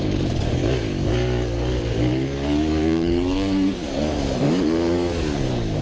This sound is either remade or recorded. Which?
remade